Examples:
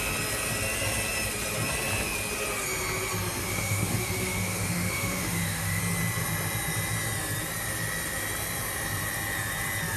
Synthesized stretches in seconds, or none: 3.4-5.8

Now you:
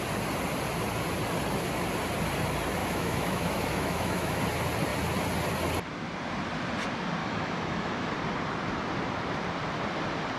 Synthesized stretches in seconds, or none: 2.8-4.4; 7.2-8.1